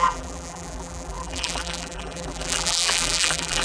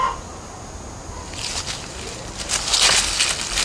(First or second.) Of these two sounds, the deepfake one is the first